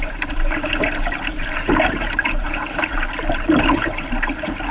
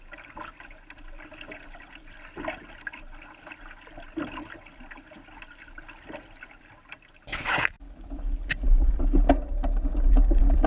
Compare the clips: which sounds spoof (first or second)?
first